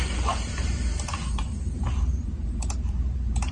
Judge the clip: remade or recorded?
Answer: remade